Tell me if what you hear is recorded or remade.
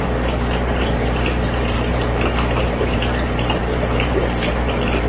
remade